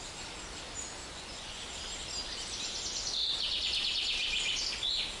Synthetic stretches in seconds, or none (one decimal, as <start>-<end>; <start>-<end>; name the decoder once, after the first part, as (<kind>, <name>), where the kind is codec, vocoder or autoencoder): 1.0-1.6 (vocoder, Vocos)